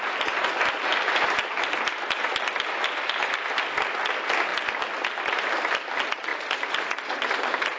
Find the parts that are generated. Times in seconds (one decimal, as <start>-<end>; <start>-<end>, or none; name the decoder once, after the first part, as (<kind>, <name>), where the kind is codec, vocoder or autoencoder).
none